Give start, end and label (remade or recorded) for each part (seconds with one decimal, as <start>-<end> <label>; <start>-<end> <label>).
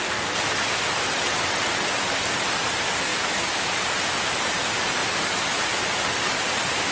0.0-3.1 recorded; 3.1-3.8 remade; 3.8-6.9 recorded